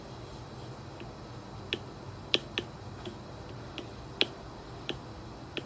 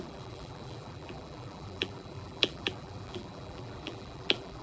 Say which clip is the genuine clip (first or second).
first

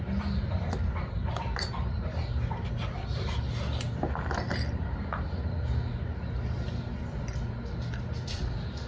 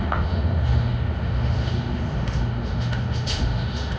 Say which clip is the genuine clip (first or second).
first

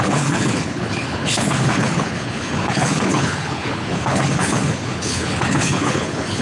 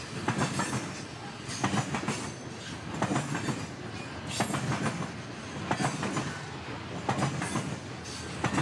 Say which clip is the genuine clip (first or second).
second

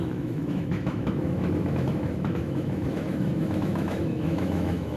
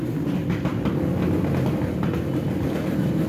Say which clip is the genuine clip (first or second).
second